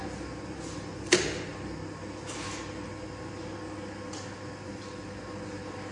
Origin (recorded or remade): recorded